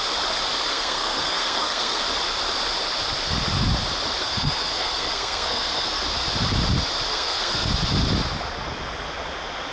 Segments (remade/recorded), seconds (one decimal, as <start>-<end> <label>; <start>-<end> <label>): 0.0-0.7 recorded; 0.7-2.0 remade; 2.0-4.2 recorded; 4.2-6.0 remade; 6.0-7.1 recorded; 7.1-7.7 remade; 7.7-9.7 recorded